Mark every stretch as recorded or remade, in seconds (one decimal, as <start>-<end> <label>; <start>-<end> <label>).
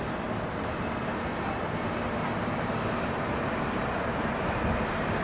0.0-5.2 recorded